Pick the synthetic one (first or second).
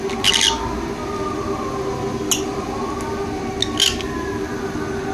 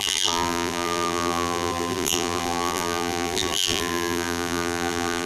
second